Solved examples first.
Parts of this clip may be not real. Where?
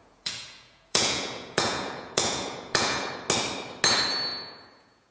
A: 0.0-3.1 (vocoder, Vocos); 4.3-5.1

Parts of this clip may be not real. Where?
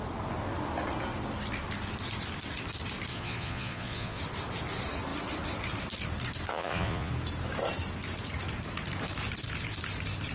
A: 3.1-4.2 (vocoder, Vocos); 6.5-7.1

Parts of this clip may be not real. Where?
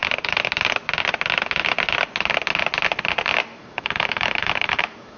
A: 3.5-5.2 (autoencoder, DAC-VAE)